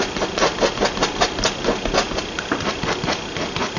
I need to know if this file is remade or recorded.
recorded